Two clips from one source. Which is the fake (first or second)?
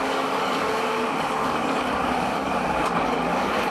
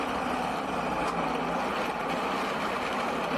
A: first